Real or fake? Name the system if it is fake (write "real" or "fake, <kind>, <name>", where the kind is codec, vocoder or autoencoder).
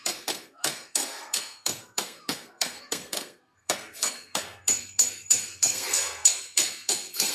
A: fake, codec, SNAC